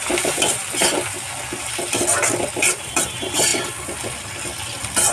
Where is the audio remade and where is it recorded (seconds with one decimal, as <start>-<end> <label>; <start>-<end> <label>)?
0.0-0.6 remade; 0.6-2.6 recorded; 2.6-3.5 remade; 3.5-5.1 recorded